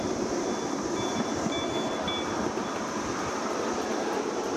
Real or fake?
real